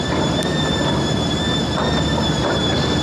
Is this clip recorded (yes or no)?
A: no